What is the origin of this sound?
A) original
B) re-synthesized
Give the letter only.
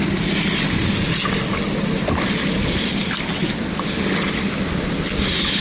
A